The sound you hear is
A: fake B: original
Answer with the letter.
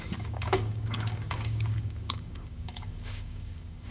A